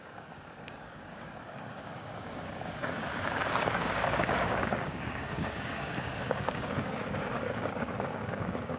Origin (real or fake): fake